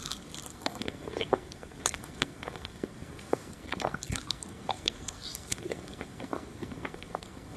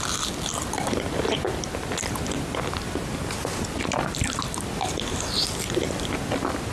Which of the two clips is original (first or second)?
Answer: second